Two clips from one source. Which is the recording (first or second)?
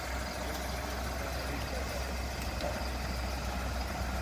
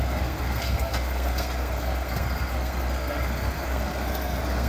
first